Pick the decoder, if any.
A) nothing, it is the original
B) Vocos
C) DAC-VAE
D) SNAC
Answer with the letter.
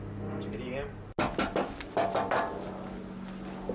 A